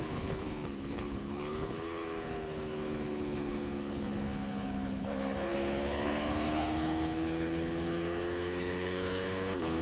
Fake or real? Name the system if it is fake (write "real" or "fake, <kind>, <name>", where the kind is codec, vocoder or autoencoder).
fake, codec, HILCodec